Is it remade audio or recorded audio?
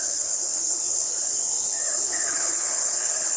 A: remade